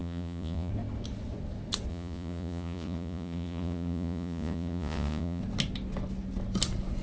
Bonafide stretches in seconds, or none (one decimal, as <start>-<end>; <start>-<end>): 0.7-1.9; 5.4-7.0